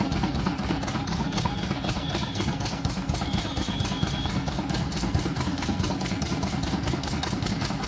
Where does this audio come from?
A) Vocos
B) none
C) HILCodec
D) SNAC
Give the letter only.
D